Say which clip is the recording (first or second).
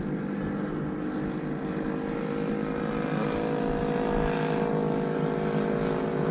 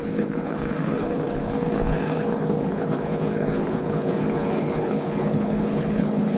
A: first